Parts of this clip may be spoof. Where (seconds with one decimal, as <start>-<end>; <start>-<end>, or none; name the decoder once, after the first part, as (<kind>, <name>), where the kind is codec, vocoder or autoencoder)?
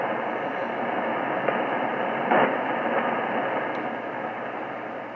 none